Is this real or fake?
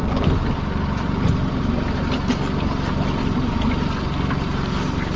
real